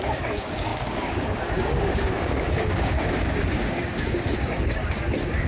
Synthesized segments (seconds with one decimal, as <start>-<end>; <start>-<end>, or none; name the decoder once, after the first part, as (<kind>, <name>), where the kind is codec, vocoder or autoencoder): 0.0-5.5 (codec, DAC)